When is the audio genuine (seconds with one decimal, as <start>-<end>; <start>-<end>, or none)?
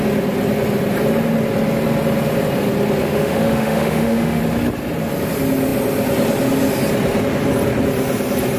0.0-3.0; 4.4-8.6